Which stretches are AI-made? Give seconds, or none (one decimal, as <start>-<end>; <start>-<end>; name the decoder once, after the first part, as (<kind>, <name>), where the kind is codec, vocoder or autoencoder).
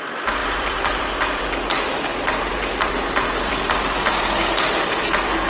0.4-1.4 (vocoder, BigVGAN v2); 2.1-4.1